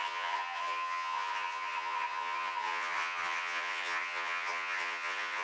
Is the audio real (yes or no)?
no